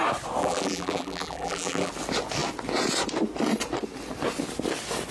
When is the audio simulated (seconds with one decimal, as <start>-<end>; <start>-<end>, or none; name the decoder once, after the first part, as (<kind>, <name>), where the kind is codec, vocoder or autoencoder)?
0.4-1.9 (vocoder, BigVGAN v2)